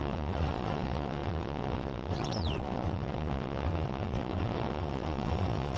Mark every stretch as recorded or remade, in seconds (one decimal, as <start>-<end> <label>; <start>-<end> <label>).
0.0-5.8 remade